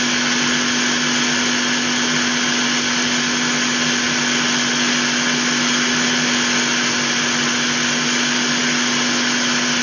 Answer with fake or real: real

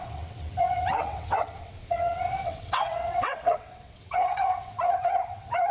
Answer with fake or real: fake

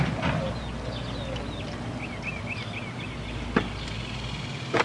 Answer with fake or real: real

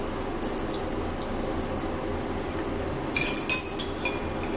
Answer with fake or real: real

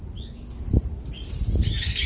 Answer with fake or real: real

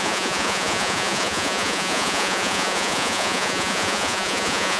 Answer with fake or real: fake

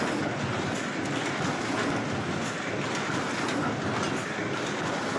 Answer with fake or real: real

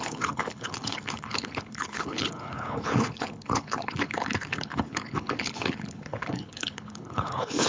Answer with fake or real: fake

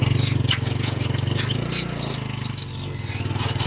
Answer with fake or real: real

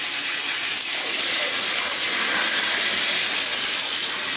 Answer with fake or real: real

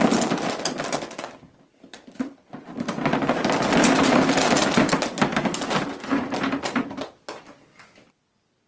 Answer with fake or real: real